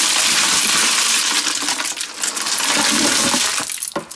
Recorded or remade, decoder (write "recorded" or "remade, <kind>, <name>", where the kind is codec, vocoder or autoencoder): recorded